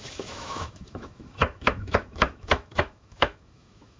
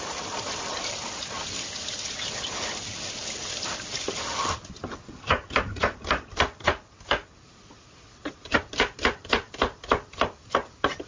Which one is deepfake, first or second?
first